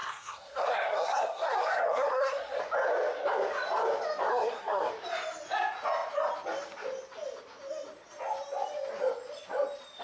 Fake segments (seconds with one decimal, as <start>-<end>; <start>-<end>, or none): 0.0-2.6; 4.3-4.9